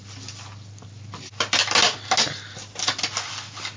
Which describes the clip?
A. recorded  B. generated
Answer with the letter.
A